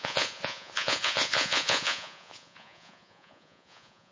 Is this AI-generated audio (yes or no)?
yes